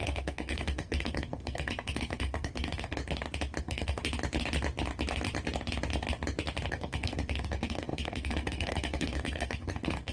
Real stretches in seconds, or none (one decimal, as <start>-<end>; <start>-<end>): 3.0-3.6; 4.0-6.7